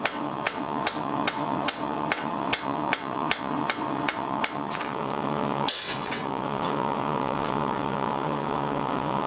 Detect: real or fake fake